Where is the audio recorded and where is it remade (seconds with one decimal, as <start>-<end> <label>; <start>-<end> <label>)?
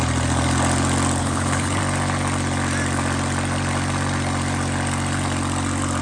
0.0-1.2 recorded; 1.2-1.8 remade; 1.8-6.0 recorded